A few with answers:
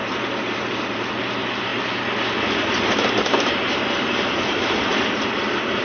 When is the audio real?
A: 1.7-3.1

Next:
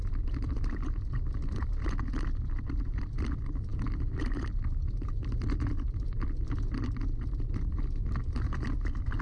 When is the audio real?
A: 0.0-9.2

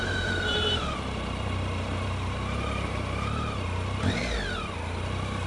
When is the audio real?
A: 4.2-5.5

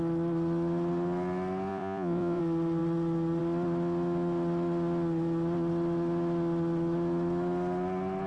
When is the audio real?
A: 0.0-1.7; 2.4-8.3

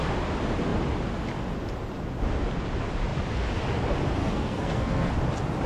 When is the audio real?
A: 0.0-4.2; 5.1-5.7

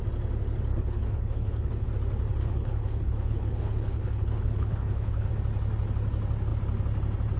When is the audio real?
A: 0.0-0.7; 1.9-2.4; 5.3-7.4

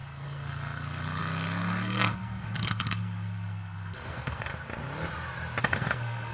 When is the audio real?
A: 4.5-5.6

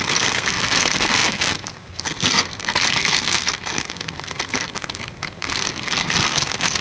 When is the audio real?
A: none